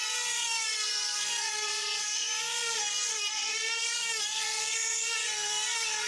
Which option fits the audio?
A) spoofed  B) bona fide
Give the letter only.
A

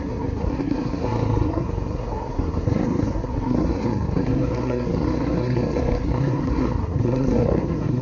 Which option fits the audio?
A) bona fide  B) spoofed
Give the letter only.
B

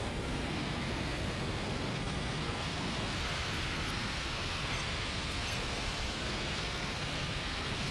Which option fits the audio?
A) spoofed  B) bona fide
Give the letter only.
A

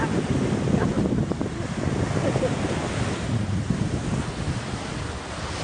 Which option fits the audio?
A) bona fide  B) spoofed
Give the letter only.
A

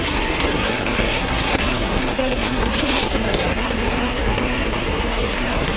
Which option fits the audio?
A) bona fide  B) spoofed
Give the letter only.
B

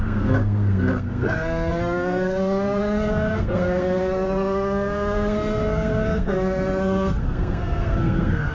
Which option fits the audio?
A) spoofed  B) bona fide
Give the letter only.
A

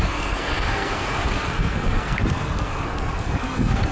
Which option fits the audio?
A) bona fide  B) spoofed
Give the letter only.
B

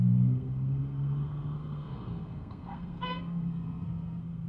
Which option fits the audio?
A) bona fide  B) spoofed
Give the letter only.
B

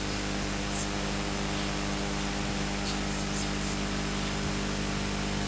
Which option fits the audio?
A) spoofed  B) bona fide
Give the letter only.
B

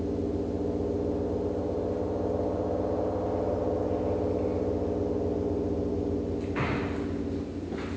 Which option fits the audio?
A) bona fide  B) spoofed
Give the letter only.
A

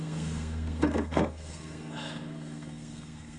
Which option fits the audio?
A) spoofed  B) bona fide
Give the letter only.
A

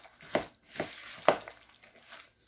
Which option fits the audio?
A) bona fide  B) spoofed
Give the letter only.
A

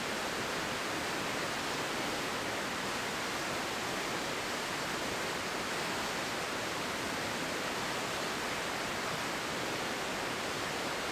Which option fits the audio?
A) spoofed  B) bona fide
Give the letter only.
B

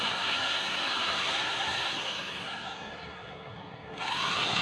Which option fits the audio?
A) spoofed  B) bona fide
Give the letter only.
A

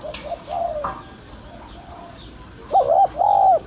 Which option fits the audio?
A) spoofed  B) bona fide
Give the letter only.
B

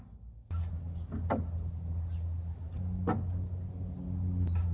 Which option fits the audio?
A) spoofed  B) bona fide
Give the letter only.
B